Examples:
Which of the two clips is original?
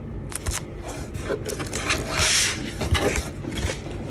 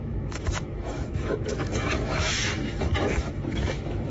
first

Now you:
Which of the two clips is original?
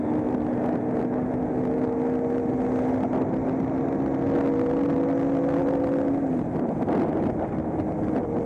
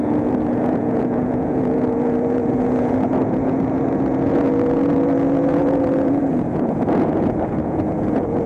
first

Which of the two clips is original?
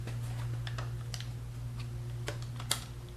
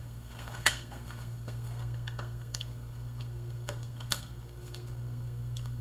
first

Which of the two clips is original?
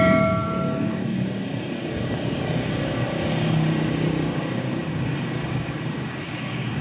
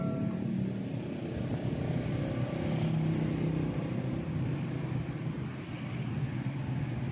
second